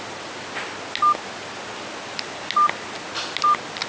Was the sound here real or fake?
real